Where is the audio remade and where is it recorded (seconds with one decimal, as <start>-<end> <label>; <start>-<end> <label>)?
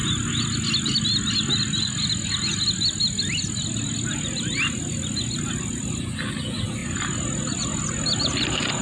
0.0-6.8 recorded; 6.8-8.8 remade